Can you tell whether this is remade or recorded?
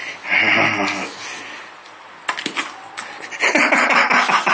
recorded